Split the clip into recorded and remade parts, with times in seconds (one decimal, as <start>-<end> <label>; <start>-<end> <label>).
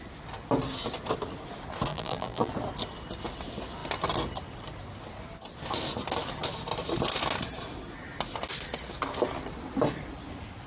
0.0-1.9 recorded; 1.9-2.5 remade; 2.5-10.7 recorded